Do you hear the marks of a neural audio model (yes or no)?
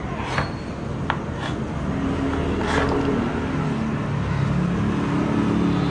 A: no